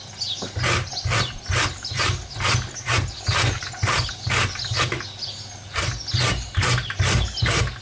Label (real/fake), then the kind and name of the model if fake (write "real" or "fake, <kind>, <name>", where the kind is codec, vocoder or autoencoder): real